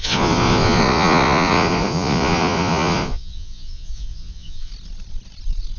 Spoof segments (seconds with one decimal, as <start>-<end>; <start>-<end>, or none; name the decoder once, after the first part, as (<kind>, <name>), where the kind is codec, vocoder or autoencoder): 0.0-4.7 (vocoder, Vocos)